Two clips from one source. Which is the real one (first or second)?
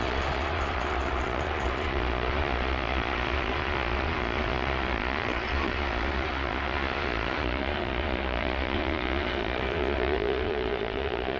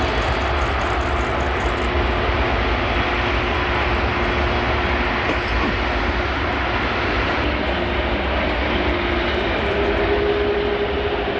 second